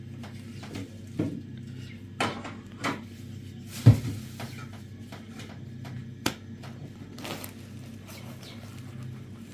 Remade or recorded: recorded